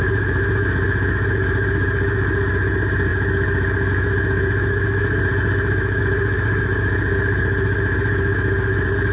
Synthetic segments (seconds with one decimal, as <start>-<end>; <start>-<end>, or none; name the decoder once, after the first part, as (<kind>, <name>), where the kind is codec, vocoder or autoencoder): 0.0-9.1 (autoencoder, DAC-VAE)